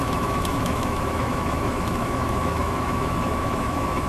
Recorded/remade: remade